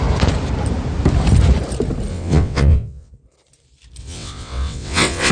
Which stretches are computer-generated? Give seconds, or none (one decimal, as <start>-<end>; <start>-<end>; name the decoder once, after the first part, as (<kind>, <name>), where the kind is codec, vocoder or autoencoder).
2.1-3.1 (vocoder, WaveNeXt); 4.0-5.3